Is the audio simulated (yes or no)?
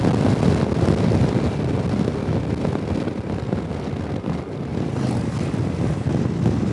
no